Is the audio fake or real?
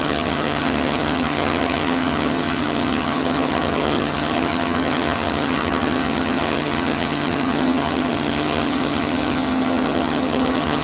fake